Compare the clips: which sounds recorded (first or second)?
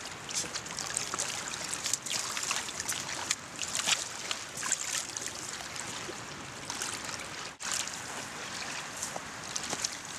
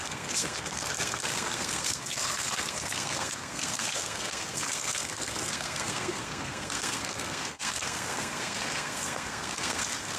first